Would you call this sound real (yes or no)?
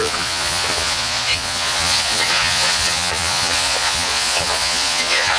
no